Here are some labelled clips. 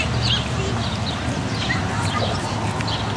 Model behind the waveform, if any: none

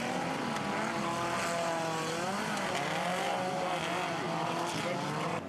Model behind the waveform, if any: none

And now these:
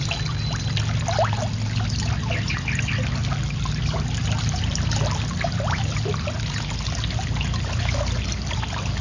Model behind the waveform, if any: none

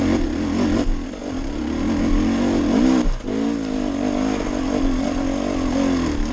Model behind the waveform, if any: none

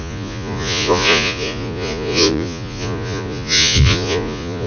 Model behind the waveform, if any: vocoder, Vocos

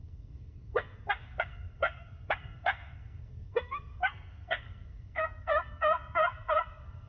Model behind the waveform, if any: codec, SNAC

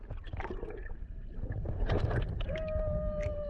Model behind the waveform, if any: none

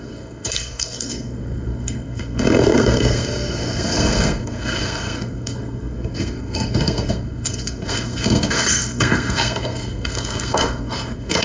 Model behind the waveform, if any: codec, SNAC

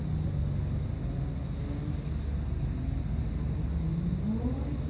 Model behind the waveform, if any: none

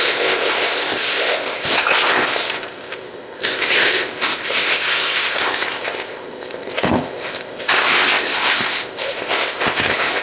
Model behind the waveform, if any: codec, ZipCodec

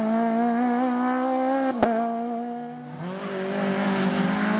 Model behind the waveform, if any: none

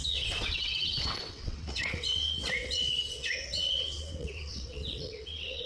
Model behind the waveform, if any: vocoder, WaveNeXt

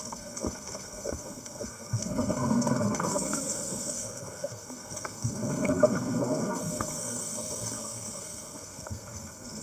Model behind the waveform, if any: codec, SNAC